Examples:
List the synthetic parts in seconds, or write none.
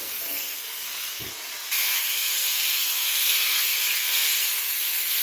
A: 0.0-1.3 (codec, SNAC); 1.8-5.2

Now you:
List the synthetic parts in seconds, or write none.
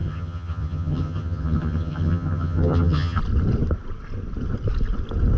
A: 0.0-3.2 (vocoder, HiFi-GAN)